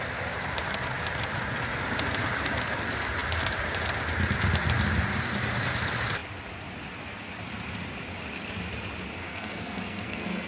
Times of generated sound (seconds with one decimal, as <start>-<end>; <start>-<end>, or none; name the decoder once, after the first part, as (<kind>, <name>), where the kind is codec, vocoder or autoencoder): 9.2-10.5 (codec, SNAC)